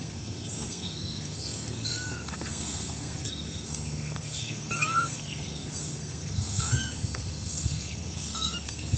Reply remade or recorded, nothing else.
remade